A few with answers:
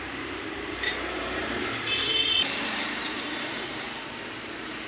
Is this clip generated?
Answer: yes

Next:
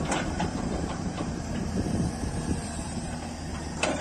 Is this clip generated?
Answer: yes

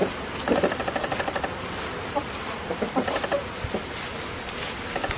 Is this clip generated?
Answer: yes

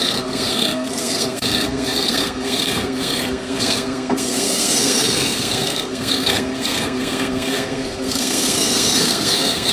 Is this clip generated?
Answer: yes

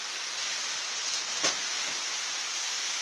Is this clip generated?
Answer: no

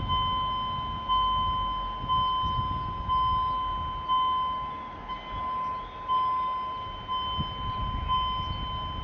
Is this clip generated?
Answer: no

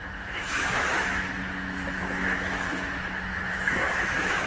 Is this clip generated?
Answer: yes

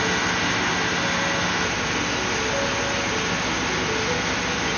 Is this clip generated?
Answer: no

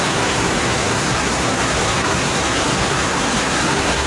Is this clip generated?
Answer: yes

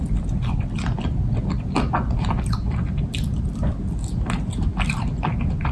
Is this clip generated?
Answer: no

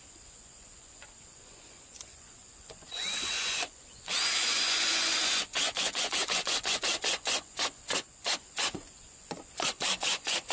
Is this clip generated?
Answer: yes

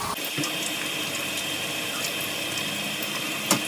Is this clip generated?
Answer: no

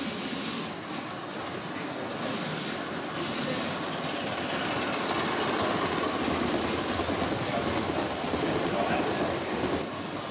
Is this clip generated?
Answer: no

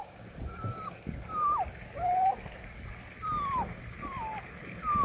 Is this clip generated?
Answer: no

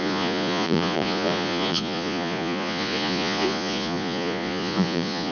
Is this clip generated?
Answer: yes